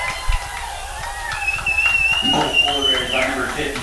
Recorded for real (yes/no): no